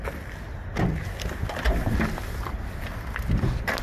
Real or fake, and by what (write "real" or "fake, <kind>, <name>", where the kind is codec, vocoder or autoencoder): real